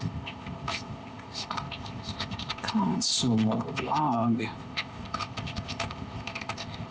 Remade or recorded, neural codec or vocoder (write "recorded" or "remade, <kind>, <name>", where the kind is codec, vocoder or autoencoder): remade, codec, ZipCodec